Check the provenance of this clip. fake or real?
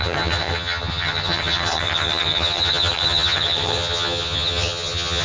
fake